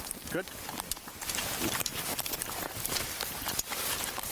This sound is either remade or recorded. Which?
remade